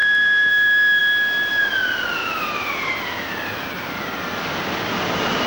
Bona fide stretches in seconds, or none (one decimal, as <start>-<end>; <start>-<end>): 0.5-2.2; 3.0-5.5